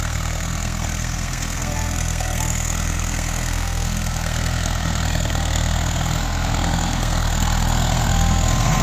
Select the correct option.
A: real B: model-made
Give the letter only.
B